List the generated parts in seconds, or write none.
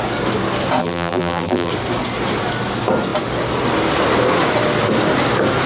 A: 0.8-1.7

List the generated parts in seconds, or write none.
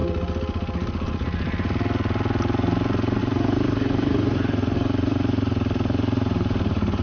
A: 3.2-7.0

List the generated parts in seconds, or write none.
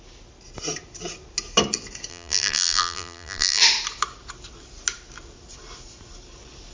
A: 2.1-3.6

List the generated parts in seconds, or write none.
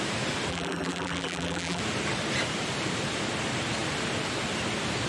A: 0.5-1.8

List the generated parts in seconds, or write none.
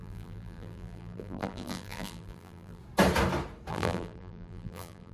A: 0.0-2.8; 3.7-5.1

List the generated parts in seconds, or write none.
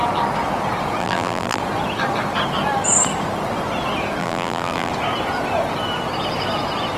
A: 1.0-1.6; 4.2-4.9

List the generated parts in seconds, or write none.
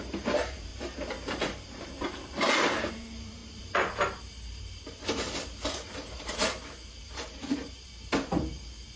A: 0.0-5.0; 5.7-7.9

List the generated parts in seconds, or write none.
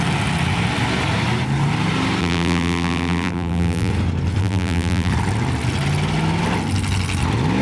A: 2.2-3.9; 4.4-5.1